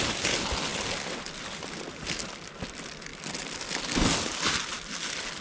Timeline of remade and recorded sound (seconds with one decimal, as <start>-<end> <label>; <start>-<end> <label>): 0.0-5.4 recorded